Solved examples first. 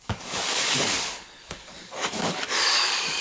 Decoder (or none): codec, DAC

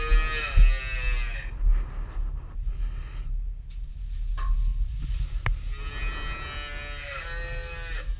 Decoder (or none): none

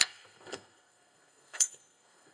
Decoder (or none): codec, SNAC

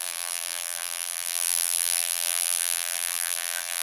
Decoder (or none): vocoder, BigVGAN v2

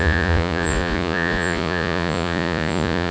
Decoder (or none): vocoder, Vocos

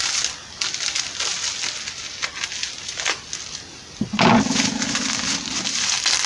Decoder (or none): none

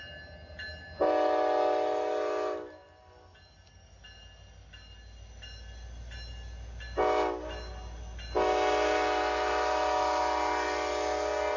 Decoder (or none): none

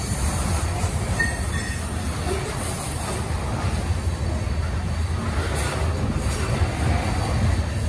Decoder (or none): none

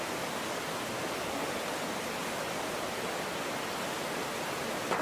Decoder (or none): none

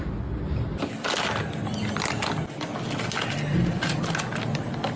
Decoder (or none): none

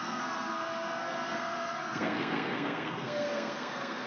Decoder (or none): codec, SNAC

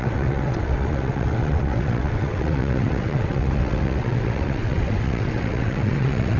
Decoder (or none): vocoder, WaveNeXt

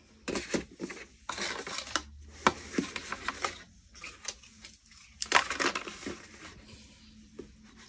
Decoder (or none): none